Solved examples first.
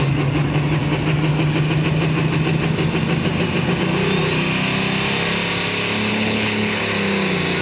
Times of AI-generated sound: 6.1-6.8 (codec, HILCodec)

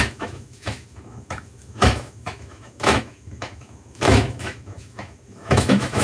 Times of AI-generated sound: 0.0-6.0 (autoencoder, DAC-VAE)

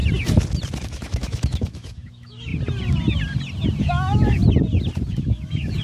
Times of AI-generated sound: 0.8-2.5 (autoencoder, DAC-VAE); 3.8-4.4; 5.1-5.8

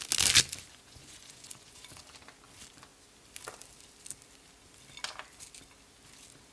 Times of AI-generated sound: 0.7-2.0 (vocoder, Vocos)

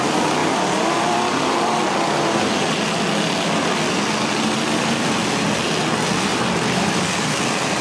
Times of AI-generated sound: 0.4-5.1 (vocoder, BigVGAN v2); 6.3-7.0